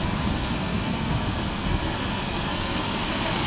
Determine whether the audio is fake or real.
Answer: fake